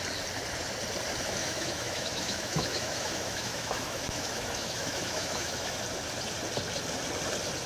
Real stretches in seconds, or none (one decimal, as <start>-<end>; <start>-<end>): 0.0-1.4; 5.8-7.7